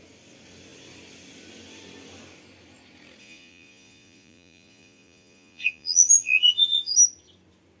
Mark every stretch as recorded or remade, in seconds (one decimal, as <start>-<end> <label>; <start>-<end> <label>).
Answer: 0.0-3.2 recorded; 3.2-6.9 remade; 6.9-7.8 recorded